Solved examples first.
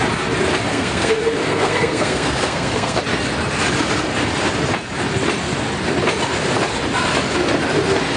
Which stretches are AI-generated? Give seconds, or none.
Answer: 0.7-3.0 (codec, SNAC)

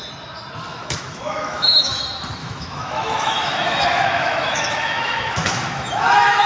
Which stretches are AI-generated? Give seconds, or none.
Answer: 0.7-2.0 (autoencoder, DAC-VAE); 2.4-6.5

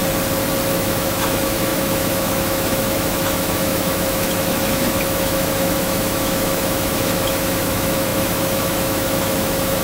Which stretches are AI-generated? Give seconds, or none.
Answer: 0.7-9.8 (autoencoder, DAC-VAE)

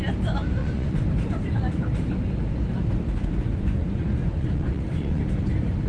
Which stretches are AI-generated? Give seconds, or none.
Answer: 0.6-1.1 (vocoder, Vocos); 3.2-5.2

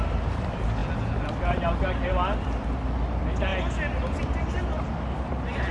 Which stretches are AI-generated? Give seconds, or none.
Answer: none